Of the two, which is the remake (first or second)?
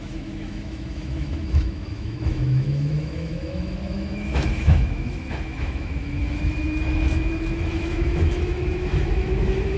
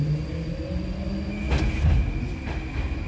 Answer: first